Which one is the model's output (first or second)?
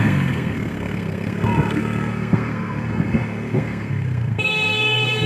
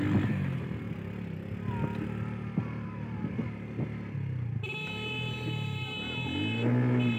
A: first